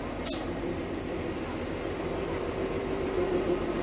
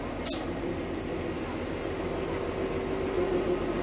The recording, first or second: second